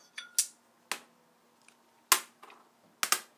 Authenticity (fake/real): real